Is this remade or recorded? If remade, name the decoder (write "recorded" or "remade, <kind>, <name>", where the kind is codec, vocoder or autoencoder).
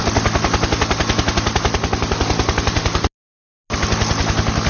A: recorded